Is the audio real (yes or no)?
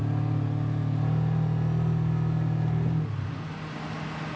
yes